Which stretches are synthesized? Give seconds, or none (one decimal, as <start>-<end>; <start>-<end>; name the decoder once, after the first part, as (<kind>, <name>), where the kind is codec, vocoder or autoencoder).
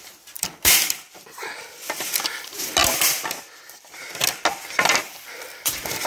0.0-4.2 (vocoder, BigVGAN v2); 4.8-6.1